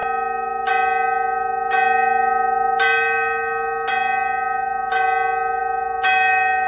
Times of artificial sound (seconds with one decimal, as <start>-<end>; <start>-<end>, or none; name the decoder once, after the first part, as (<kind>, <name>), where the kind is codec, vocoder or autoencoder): none